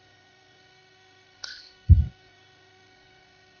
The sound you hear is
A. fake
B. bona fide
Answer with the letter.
A